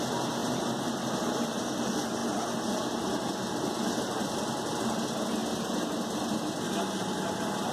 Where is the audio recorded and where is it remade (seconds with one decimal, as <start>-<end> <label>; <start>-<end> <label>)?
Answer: 0.0-7.7 recorded